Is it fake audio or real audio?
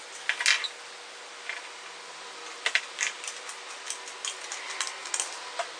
real